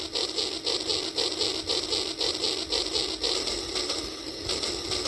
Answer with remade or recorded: recorded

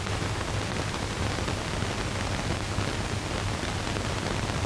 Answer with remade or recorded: recorded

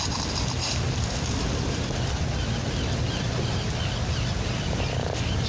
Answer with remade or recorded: recorded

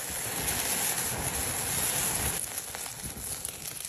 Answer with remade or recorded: recorded